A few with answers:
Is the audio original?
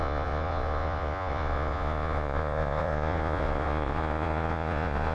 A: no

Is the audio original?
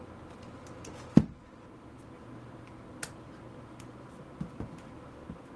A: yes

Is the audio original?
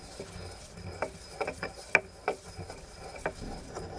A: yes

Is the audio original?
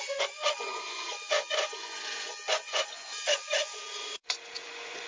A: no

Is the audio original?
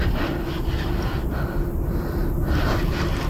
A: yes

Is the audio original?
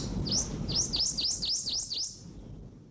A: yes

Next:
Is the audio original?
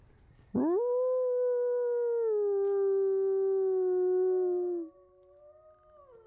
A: yes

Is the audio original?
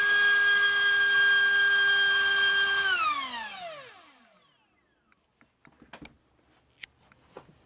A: yes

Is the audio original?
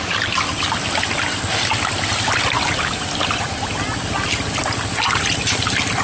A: yes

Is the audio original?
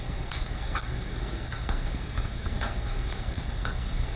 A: no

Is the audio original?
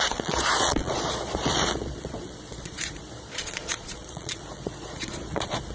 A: no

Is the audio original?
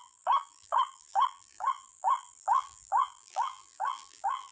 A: no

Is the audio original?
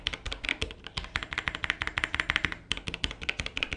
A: yes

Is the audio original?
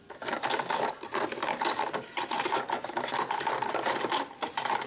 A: yes